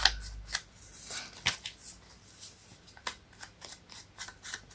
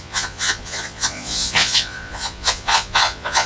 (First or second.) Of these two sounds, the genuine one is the first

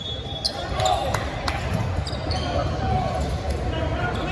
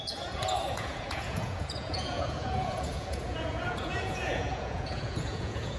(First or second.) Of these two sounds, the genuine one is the first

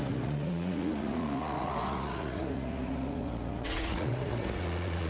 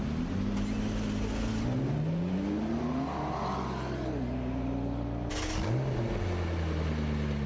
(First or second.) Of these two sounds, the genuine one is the second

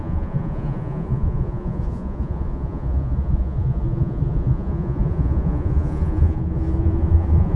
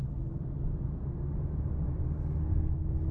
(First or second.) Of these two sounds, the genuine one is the second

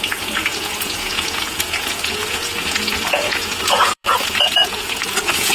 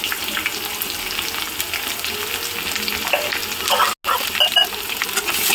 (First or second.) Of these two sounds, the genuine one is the second